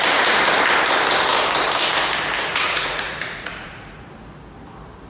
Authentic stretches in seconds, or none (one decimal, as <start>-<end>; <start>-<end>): 0.0-2.5; 4.1-5.1